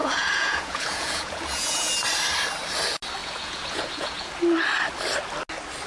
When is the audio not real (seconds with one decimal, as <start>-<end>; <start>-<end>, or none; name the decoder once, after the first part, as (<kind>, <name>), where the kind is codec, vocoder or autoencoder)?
0.0-1.9 (vocoder, Vocos); 3.2-4.3